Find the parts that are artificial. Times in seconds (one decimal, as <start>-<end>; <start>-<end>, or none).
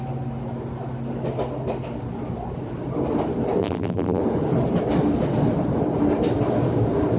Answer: 3.6-4.2